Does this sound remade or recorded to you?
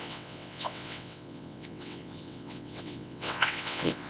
remade